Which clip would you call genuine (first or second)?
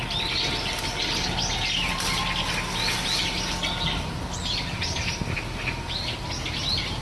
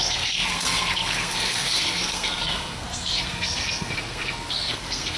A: first